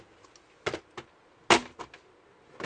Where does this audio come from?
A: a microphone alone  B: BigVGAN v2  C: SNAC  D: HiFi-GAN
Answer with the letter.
A